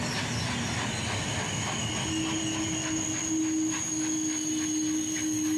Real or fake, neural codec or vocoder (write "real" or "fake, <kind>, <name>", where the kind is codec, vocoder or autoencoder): real